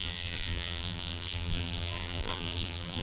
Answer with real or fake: fake